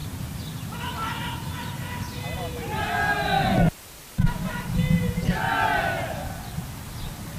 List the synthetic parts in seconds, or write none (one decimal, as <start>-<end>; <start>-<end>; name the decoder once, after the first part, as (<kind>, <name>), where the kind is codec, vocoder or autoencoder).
none